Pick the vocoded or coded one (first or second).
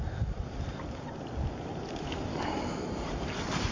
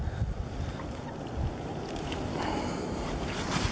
first